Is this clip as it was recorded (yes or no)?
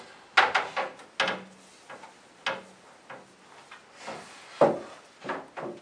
yes